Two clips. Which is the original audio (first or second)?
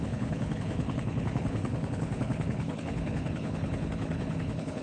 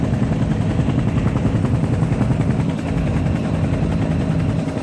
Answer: second